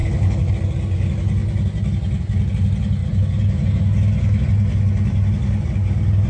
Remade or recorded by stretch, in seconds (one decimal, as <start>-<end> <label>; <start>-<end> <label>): 0.0-0.5 remade; 0.5-6.3 recorded